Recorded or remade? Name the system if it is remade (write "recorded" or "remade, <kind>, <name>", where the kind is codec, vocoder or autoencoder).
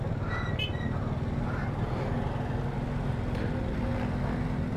recorded